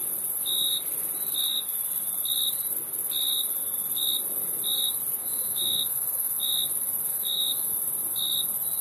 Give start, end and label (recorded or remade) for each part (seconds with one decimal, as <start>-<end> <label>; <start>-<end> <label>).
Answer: 0.0-5.2 recorded; 5.2-6.5 remade; 6.5-7.1 recorded; 7.1-7.8 remade; 7.8-8.8 recorded